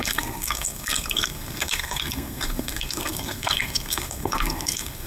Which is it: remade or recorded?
remade